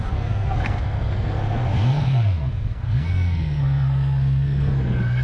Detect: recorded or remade remade